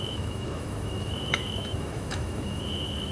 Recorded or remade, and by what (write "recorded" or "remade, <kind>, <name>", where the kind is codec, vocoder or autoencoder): remade, autoencoder, DAC-VAE